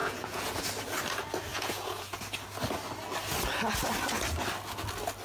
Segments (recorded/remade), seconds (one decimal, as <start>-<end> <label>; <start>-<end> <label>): 0.0-0.6 remade; 0.6-1.5 recorded; 1.5-2.2 remade; 2.2-5.2 recorded